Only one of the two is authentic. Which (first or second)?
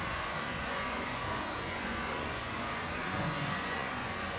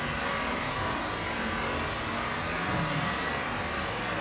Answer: second